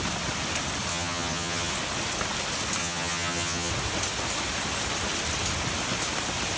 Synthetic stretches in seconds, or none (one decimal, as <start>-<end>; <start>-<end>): 0.9-1.7; 2.8-3.7